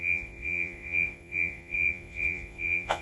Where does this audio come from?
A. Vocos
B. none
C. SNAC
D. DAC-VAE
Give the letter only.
A